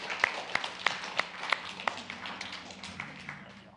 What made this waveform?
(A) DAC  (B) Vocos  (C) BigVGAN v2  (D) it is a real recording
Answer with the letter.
D